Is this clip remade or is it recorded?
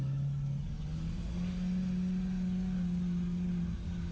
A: recorded